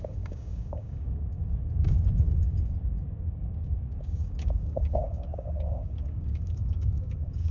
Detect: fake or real fake